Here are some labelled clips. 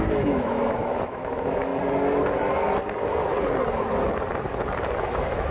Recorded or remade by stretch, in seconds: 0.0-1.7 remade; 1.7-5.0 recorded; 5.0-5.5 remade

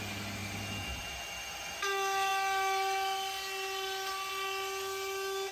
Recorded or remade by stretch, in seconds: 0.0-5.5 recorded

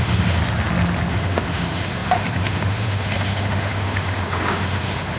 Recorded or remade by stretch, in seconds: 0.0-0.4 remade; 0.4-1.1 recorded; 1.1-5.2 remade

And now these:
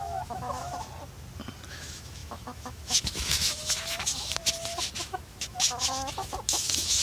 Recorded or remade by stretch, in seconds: 0.0-0.7 remade; 0.7-1.7 recorded; 1.7-4.4 remade; 4.4-5.0 recorded; 5.0-7.0 remade

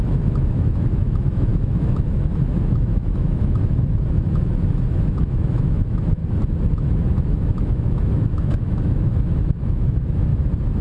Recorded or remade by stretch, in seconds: 0.0-6.2 remade; 6.2-6.7 recorded; 6.7-10.3 remade; 10.3-10.8 recorded

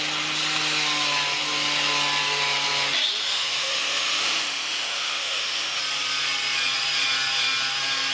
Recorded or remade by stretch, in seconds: 0.0-3.2 recorded; 3.2-5.8 remade; 5.8-8.1 recorded

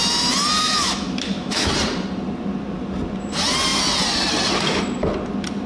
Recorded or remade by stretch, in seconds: 0.0-0.6 recorded; 0.6-1.7 remade; 1.7-5.7 recorded